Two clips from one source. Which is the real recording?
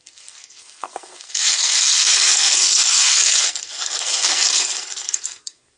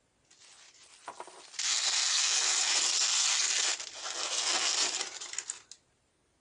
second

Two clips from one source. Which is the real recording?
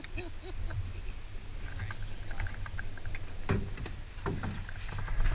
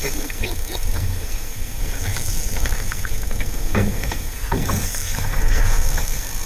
first